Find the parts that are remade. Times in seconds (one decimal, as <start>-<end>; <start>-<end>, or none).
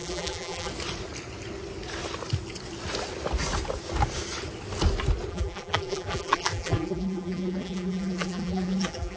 0.0-0.7; 5.3-9.2